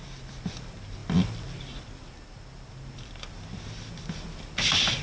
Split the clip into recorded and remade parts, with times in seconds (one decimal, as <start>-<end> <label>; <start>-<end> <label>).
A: 0.0-5.0 recorded